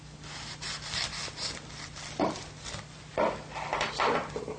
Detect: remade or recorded recorded